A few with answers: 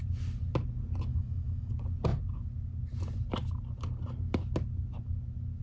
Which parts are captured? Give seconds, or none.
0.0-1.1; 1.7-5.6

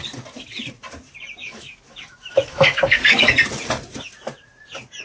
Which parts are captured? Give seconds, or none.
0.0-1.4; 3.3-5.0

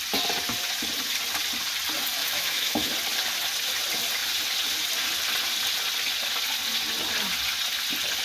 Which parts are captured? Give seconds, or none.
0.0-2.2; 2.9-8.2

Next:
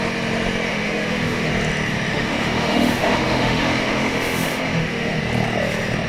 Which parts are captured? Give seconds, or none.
0.0-0.7; 1.5-2.1; 5.2-6.1

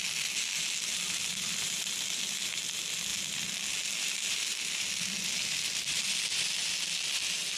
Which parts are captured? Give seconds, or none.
0.0-7.6

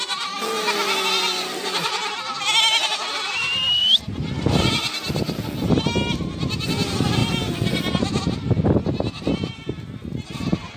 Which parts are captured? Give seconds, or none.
0.0-10.8

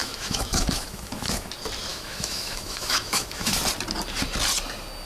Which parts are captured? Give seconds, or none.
1.5-1.9; 3.5-5.1

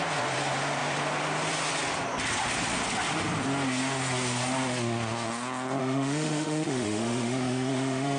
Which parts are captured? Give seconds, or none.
0.0-5.8